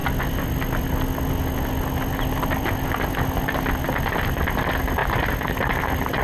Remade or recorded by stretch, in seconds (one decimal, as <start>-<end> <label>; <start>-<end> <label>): 0.0-6.2 recorded